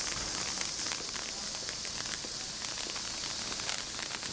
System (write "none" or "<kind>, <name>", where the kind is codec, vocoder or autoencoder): none